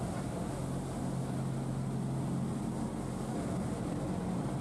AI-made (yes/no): no